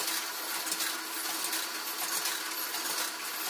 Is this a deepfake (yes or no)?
no